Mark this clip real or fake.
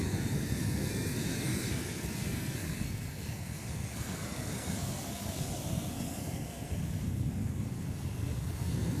fake